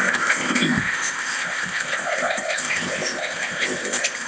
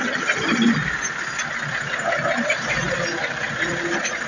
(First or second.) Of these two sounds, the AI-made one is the first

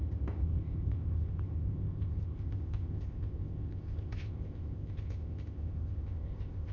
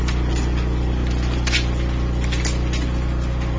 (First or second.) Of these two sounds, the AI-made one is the first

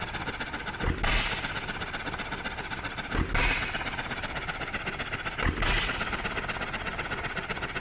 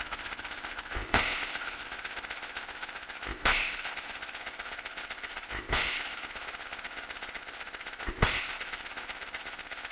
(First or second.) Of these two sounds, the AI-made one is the second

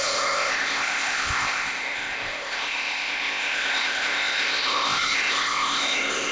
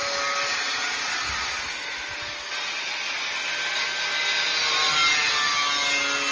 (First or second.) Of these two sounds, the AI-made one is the first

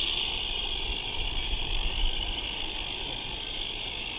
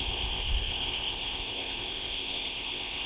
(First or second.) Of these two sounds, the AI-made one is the second